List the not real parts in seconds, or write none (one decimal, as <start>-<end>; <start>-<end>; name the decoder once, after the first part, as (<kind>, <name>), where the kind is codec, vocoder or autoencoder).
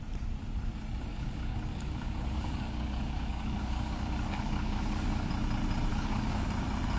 1.1-5.3 (codec, DAC); 5.9-6.5